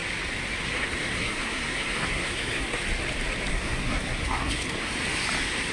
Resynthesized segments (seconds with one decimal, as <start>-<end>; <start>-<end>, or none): 0.6-2.8; 3.5-4.9